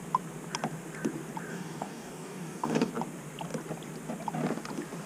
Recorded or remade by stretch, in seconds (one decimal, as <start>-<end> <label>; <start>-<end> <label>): 0.0-1.5 recorded; 1.5-2.9 remade; 2.9-5.1 recorded